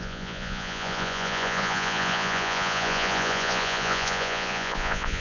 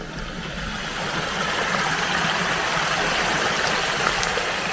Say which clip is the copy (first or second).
first